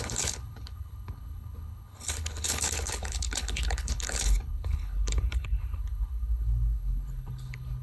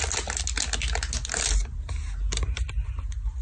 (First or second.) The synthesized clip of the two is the first